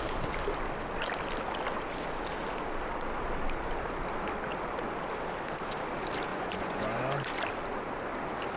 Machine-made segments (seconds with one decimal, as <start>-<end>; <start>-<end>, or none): 6.3-7.0